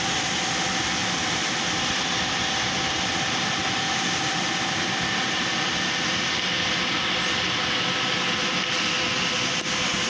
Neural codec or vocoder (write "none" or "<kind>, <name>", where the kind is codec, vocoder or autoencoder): none